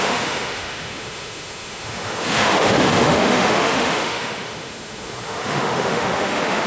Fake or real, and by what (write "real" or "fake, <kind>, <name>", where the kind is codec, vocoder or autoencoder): fake, autoencoder, DAC-VAE